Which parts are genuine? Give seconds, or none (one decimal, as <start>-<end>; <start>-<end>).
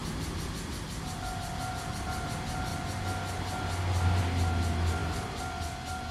0.0-6.1